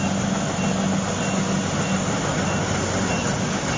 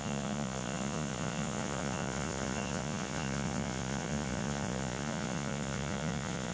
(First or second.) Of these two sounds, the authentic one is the first